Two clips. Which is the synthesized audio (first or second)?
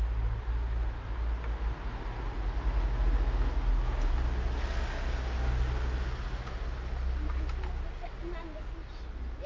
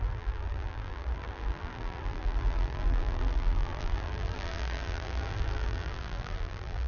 second